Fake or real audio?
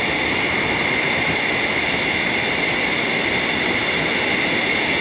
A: real